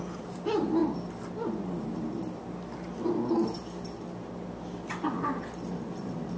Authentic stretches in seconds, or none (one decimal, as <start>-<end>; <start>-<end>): 0.0-6.4